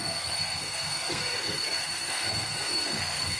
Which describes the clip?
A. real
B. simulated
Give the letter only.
B